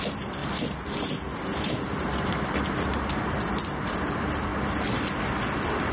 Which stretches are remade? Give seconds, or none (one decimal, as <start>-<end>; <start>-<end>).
0.0-4.5; 5.1-5.9